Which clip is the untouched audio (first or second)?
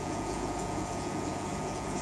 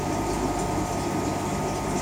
second